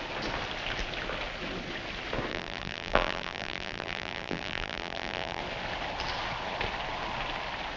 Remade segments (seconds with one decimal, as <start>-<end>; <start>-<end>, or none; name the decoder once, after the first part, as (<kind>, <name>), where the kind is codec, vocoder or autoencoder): 2.3-5.4 (vocoder, BigVGAN v2)